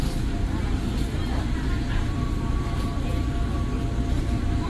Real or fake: real